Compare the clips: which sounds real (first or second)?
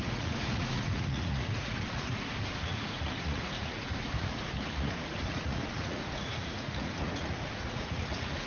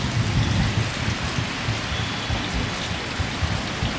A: second